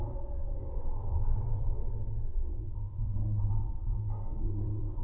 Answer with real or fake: fake